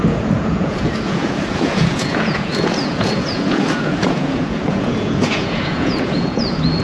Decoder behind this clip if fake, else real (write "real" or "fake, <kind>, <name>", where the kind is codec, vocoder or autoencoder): fake, vocoder, Vocos